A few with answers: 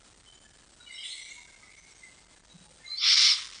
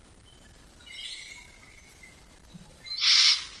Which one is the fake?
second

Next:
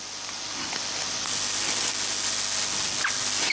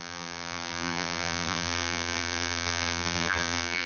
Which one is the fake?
second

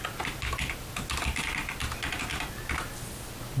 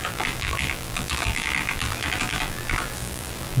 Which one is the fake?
second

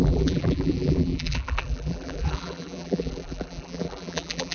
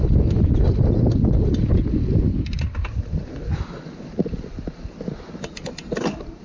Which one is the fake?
first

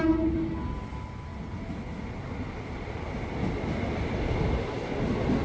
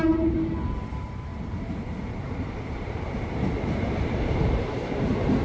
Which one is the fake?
second